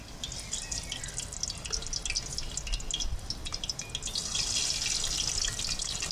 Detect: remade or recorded recorded